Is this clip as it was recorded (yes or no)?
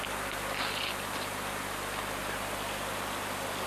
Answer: yes